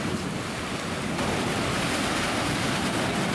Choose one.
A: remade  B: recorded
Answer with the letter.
B